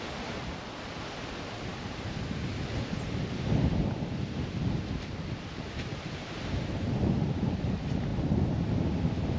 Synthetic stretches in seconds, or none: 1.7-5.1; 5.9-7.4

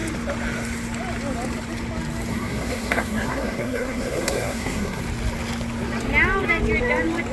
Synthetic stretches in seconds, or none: 2.3-5.0

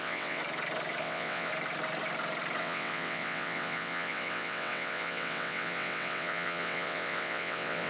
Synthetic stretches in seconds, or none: 0.0-0.4; 1.0-1.5; 2.6-7.9

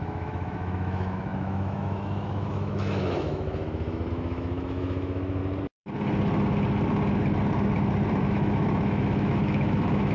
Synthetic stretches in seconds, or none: 0.0-5.4; 8.2-10.1

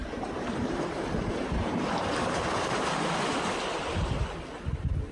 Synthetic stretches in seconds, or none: 0.0-3.1